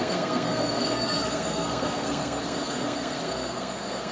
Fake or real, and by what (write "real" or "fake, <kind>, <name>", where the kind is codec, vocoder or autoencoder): fake, codec, SNAC